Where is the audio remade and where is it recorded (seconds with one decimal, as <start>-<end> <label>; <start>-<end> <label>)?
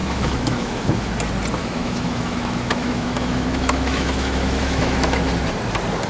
0.0-1.1 remade; 1.1-1.6 recorded; 1.6-5.3 remade; 5.3-6.1 recorded